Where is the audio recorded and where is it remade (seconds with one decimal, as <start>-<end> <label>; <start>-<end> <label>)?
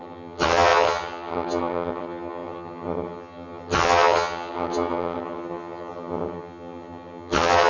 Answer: 0.0-7.7 remade